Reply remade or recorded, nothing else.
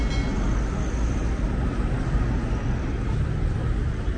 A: recorded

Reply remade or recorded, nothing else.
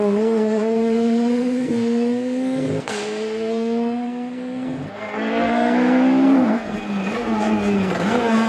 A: remade